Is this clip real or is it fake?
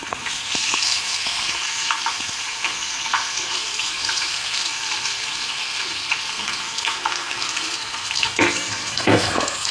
fake